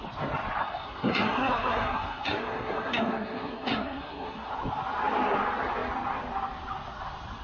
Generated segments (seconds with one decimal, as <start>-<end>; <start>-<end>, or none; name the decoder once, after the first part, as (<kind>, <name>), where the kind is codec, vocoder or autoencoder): 0.6-4.5 (codec, SNAC)